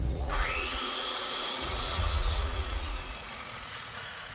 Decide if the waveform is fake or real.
fake